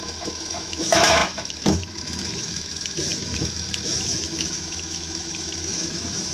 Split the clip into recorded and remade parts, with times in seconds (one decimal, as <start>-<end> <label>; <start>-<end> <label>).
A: 0.0-6.3 remade